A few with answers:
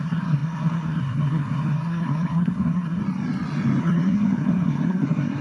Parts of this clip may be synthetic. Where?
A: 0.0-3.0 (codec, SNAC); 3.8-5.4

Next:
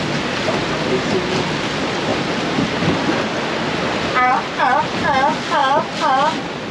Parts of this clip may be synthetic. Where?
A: none

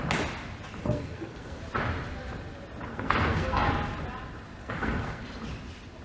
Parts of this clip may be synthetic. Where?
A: 0.8-1.6 (codec, SNAC); 2.9-3.7; 4.6-5.2

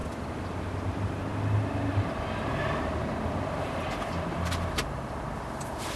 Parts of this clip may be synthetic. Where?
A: none

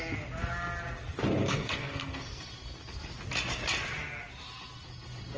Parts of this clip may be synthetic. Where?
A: 1.4-2.4 (codec, SNAC)

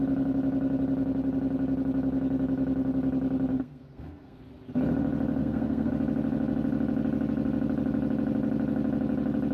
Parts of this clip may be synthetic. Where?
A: 3.5-4.4 (codec, SNAC); 5.4-5.9

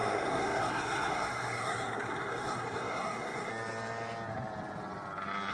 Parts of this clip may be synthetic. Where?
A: 0.0-3.5 (codec, SNAC)